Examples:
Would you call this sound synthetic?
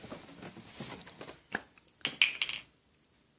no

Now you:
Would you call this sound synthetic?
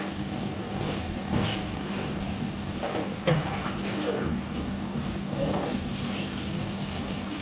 yes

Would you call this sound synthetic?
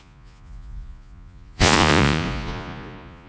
yes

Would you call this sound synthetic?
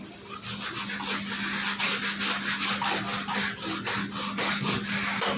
no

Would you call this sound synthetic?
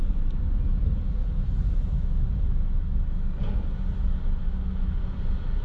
no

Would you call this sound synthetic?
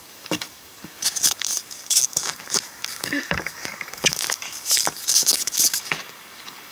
yes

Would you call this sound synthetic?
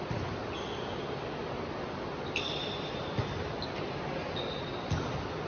yes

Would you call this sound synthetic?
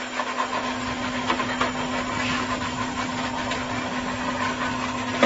yes